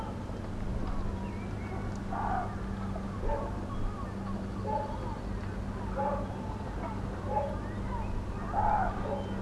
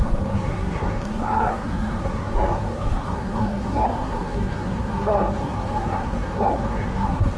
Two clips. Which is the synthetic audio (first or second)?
second